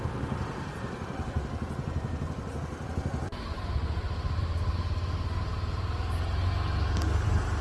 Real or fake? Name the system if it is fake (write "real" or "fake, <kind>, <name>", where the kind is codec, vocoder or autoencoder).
real